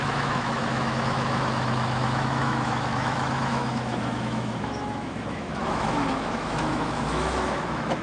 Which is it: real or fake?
fake